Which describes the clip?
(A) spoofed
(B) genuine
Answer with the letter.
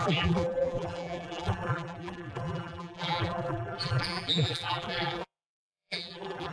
A